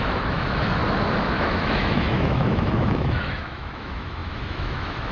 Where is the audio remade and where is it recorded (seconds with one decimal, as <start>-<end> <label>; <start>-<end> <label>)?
0.0-0.8 remade; 0.8-1.3 recorded; 1.3-5.1 remade